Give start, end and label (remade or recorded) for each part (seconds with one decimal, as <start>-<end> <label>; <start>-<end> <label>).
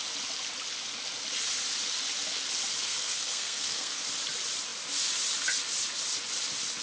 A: 0.0-2.8 recorded; 2.8-4.0 remade; 4.0-6.8 recorded